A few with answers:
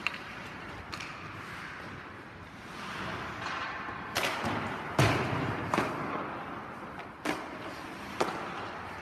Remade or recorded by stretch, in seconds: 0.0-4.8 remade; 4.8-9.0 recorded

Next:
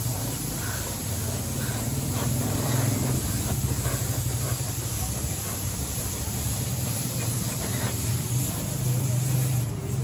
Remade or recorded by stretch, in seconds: 0.0-1.0 remade; 1.0-2.1 recorded; 2.1-7.7 remade; 7.7-9.0 recorded; 9.0-10.0 remade

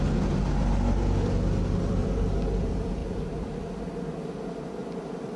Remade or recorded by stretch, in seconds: 0.0-3.0 recorded; 3.0-3.6 remade; 3.6-4.8 recorded; 4.8-5.4 remade

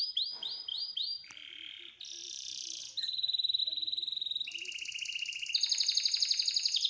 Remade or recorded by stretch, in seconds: 0.0-0.7 recorded; 0.7-1.7 remade; 1.7-2.2 recorded; 2.2-2.8 remade; 2.8-6.9 recorded

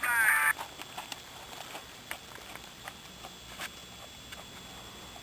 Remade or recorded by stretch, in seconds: 0.0-1.1 recorded; 1.1-3.1 remade; 3.1-5.2 recorded

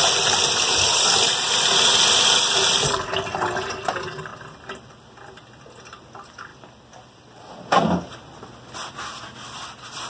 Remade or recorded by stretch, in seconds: 0.0-10.1 recorded